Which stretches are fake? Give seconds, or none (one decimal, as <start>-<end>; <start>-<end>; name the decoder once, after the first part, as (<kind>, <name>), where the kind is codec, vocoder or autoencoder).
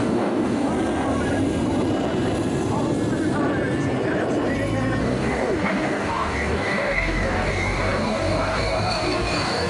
0.0-0.7 (codec, DAC); 5.0-9.7